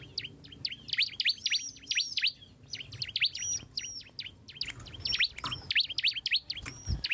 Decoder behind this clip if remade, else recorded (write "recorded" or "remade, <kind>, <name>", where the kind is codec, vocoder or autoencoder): recorded